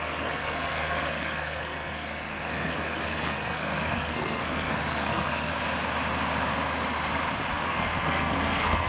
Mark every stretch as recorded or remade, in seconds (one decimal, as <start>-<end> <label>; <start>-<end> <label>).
0.0-5.5 remade; 5.5-7.6 recorded; 7.6-8.9 remade